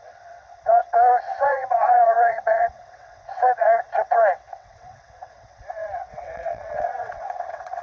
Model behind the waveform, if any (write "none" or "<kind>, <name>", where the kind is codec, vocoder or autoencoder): vocoder, WaveNeXt